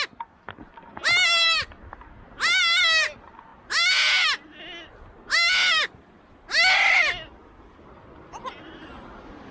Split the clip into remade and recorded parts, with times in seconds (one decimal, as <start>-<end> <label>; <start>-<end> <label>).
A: 0.0-9.5 recorded

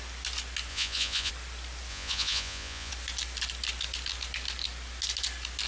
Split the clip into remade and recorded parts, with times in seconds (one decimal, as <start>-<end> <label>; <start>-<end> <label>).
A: 0.0-0.7 recorded; 0.7-1.3 remade; 1.3-1.9 recorded; 1.9-2.9 remade; 2.9-5.7 recorded